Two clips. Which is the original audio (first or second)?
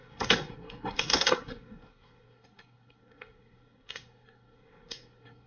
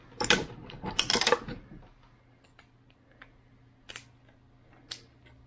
second